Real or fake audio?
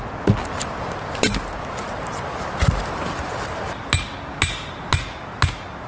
real